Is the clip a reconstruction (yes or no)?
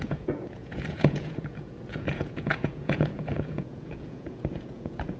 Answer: yes